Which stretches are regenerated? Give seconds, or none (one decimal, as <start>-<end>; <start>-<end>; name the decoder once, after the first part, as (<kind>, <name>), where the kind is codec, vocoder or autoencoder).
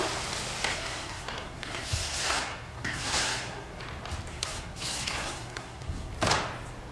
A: 0.7-3.8 (codec, SNAC); 4.3-6.1